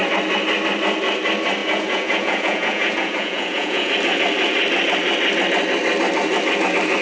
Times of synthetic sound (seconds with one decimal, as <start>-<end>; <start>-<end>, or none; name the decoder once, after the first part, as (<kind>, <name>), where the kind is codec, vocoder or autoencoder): 1.6-3.9 (vocoder, Vocos)